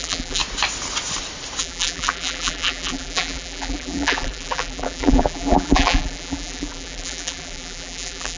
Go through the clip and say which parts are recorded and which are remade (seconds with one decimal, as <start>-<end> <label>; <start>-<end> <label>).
0.0-0.4 remade; 0.4-1.6 recorded; 1.6-8.4 remade